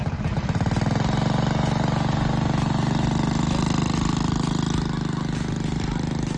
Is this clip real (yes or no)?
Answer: yes